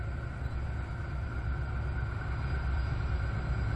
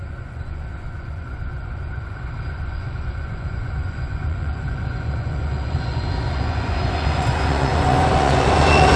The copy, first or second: second